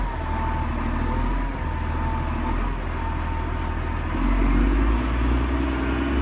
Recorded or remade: recorded